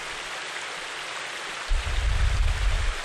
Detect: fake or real real